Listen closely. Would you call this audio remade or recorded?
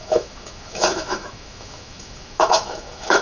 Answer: remade